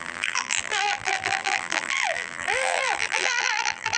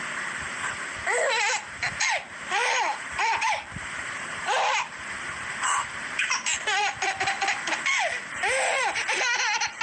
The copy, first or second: first